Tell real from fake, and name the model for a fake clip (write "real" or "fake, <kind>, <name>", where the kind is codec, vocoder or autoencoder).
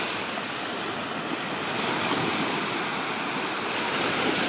real